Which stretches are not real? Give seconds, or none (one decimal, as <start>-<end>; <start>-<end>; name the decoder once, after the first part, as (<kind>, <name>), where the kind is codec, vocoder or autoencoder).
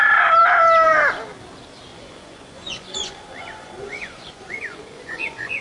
1.9-5.6 (vocoder, Vocos)